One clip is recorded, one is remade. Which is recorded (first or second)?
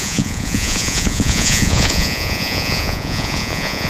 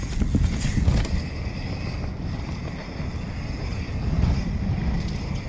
second